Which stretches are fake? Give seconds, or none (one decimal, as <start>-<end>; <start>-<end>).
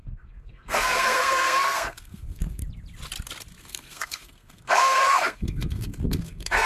0.0-2.6; 3.6-6.7